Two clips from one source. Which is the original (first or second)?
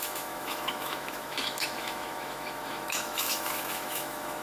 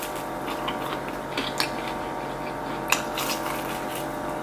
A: second